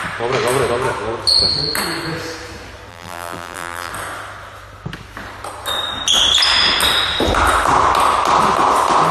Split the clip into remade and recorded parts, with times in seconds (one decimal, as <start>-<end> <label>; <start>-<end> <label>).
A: 0.0-2.9 recorded; 2.9-3.9 remade; 3.9-9.1 recorded